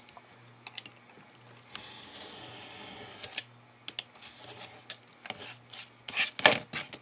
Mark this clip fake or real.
real